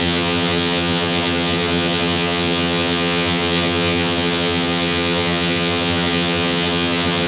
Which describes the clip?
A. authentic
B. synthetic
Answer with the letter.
B